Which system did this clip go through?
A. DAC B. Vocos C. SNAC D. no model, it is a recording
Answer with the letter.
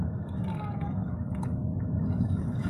A